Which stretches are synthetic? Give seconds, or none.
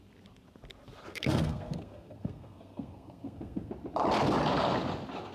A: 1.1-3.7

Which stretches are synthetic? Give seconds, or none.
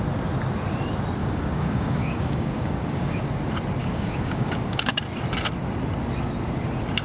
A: 1.2-3.3; 3.8-5.0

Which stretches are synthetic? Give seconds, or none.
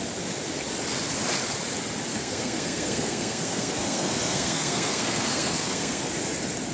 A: 2.1-6.1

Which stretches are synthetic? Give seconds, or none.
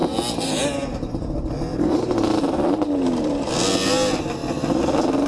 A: 1.7-3.5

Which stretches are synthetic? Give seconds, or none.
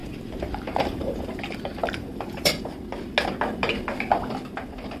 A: 0.0-1.2; 1.8-2.5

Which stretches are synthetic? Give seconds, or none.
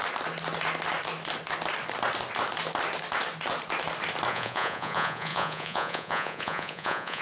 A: 4.3-7.2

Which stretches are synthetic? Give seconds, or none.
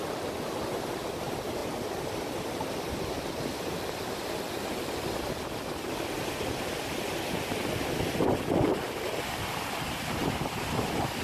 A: 1.6-2.2